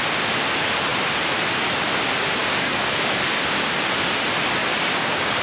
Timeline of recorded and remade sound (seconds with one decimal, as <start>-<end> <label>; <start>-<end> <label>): 0.0-2.4 recorded; 2.4-3.7 remade; 3.7-4.6 recorded; 4.6-5.4 remade